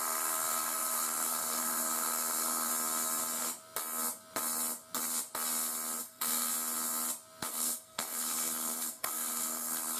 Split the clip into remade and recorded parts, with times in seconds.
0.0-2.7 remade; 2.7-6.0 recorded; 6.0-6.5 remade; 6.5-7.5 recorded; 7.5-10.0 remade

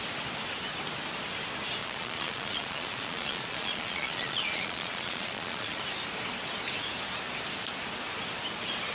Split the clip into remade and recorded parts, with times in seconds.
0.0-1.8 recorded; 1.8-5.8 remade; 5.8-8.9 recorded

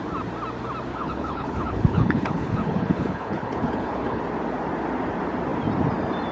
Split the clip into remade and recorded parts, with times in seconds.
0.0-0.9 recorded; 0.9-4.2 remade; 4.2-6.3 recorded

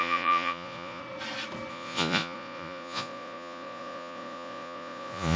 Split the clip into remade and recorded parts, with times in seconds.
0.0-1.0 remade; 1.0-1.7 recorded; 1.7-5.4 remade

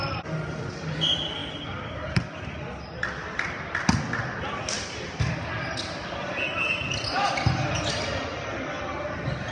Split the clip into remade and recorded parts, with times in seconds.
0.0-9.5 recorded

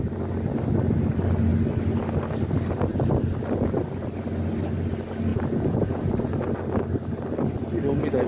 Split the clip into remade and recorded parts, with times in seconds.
0.0-5.3 recorded; 5.3-6.1 remade; 6.1-8.3 recorded

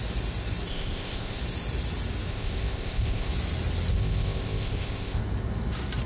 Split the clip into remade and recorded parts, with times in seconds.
0.0-0.7 recorded; 0.7-1.4 remade; 1.4-2.3 recorded; 2.3-3.3 remade; 3.3-3.9 recorded; 3.9-5.2 remade; 5.2-6.1 recorded